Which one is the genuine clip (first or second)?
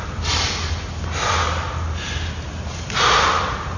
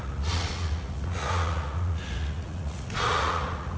first